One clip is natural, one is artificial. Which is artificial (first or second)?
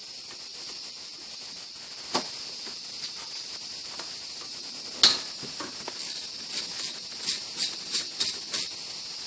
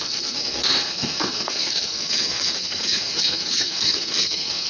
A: second